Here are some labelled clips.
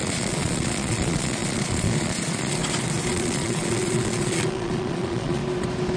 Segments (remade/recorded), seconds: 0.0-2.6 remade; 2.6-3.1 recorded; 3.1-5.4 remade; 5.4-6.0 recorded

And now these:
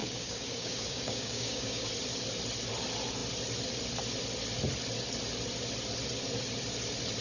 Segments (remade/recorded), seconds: 0.0-1.9 remade; 1.9-7.2 recorded

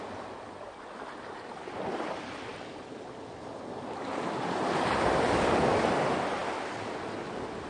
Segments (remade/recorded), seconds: 0.0-7.7 recorded

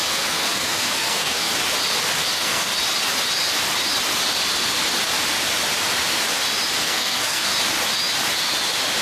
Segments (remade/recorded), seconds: 0.0-1.5 remade; 1.5-2.3 recorded; 2.3-2.7 remade; 2.7-6.8 recorded; 6.8-7.5 remade; 7.5-9.0 recorded